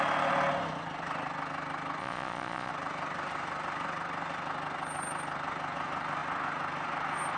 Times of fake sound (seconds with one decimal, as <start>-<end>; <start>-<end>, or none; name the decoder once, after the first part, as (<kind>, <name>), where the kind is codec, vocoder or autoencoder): 2.0-2.7 (vocoder, Vocos)